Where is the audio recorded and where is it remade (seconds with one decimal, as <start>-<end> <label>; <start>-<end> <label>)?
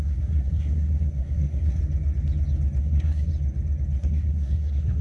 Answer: 0.0-1.8 remade; 1.8-2.8 recorded; 2.8-3.3 remade; 3.3-4.0 recorded; 4.0-5.0 remade